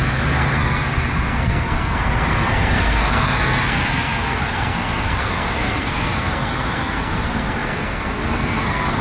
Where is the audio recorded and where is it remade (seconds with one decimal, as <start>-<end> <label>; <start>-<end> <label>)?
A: 0.0-9.0 remade